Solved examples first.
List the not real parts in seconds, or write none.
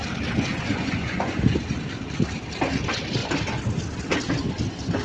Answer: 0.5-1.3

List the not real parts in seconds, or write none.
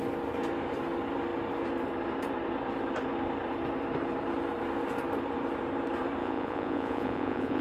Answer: 6.2-7.6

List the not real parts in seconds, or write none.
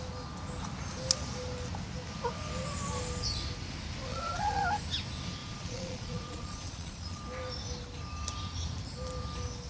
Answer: 4.1-4.6; 5.4-7.2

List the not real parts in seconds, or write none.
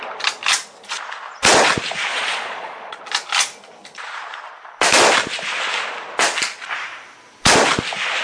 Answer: 2.1-3.0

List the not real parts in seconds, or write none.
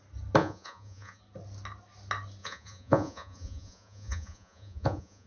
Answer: 0.4-1.2; 2.4-5.3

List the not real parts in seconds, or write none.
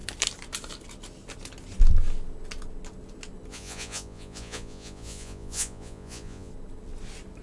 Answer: 3.5-6.5